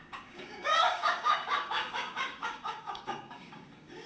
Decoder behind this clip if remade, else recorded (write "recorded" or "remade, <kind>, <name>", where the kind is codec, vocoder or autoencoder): remade, codec, DAC